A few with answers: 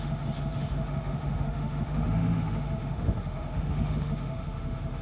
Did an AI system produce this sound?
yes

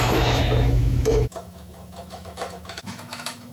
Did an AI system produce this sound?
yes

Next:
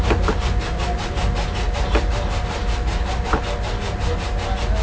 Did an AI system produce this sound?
no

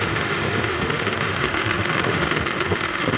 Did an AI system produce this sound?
yes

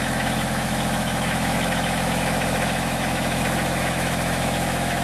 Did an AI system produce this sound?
yes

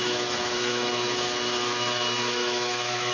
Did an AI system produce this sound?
yes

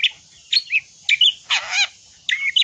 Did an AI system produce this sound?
no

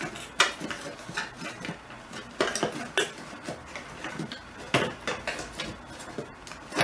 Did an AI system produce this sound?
no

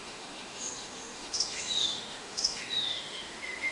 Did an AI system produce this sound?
yes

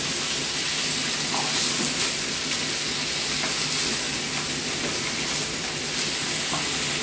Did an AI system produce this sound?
no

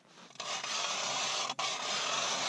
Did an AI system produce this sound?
no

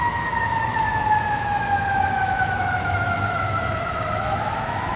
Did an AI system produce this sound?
yes